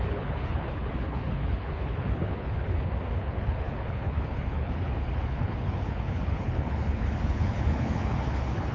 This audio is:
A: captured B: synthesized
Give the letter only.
B